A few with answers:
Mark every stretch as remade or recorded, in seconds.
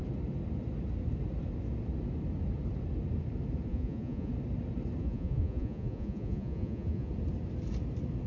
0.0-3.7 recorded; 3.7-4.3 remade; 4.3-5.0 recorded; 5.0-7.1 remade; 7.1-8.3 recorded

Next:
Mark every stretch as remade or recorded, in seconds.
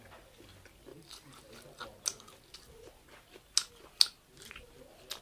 0.0-0.9 recorded; 0.9-1.5 remade; 1.5-5.2 recorded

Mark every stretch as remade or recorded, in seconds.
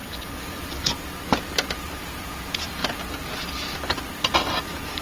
0.0-2.3 recorded; 2.3-2.8 remade; 2.8-5.0 recorded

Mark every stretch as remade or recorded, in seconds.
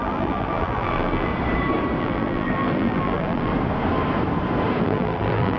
0.0-1.3 remade; 1.3-2.0 recorded; 2.0-3.5 remade; 3.5-4.8 recorded; 4.8-5.6 remade